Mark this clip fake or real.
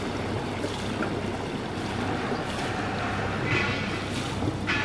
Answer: real